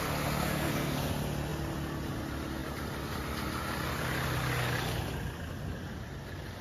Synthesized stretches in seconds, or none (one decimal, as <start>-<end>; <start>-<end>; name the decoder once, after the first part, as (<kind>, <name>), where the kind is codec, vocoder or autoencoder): 0.4-1.1 (codec, SNAC)